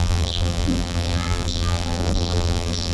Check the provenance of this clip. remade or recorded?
remade